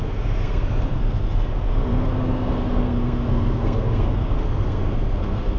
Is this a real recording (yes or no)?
no